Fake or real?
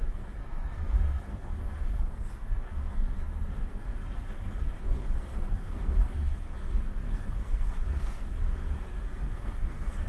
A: fake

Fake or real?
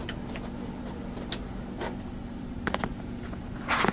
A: real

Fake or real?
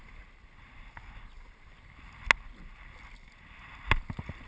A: real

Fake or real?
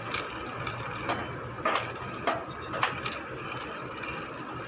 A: real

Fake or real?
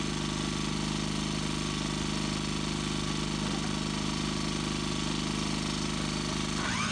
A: real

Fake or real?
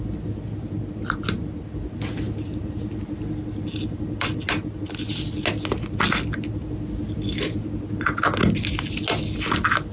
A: real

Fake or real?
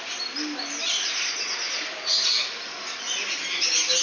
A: real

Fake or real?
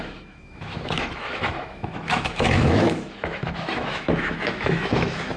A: fake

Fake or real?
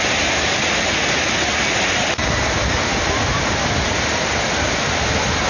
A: real